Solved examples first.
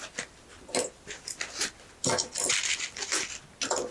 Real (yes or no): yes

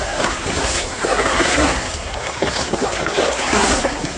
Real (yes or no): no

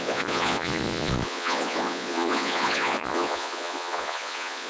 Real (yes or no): no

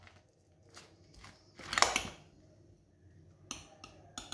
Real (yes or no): yes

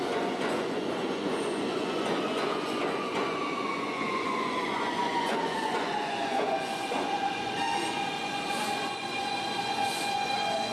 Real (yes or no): no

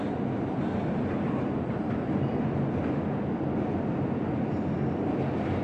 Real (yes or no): yes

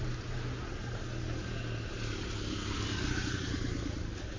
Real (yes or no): yes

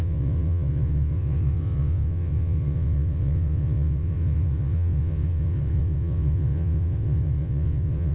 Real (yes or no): no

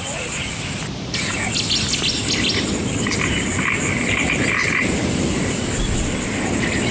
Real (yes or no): yes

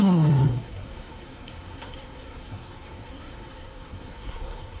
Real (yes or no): no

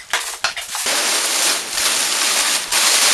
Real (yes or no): yes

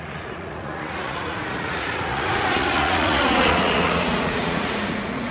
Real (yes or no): no